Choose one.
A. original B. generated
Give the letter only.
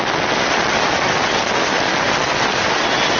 A